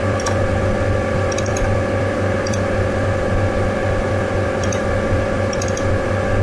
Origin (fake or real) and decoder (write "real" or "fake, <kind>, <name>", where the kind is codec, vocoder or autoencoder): fake, vocoder, BigVGAN v2